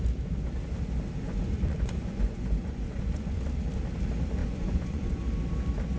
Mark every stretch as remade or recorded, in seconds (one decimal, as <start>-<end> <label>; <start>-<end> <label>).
0.0-1.2 recorded; 1.2-3.4 remade; 3.4-4.4 recorded; 4.4-5.2 remade; 5.2-6.0 recorded